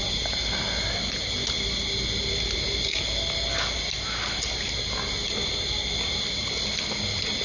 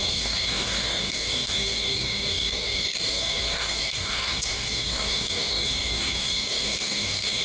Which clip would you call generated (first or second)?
second